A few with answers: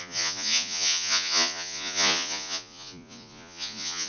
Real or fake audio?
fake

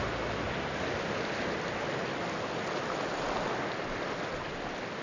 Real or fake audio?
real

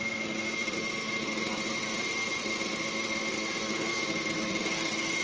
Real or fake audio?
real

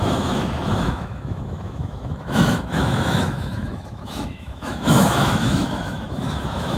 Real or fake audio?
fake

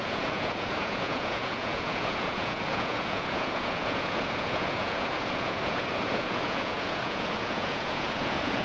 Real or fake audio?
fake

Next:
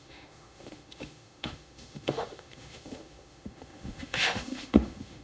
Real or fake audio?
fake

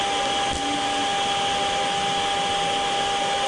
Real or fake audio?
real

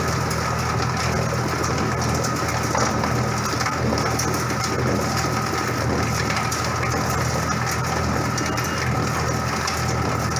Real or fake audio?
real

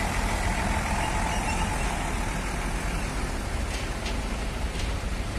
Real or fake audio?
real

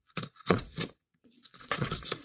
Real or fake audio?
fake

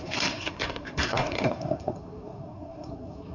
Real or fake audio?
fake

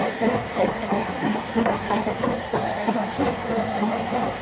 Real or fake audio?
fake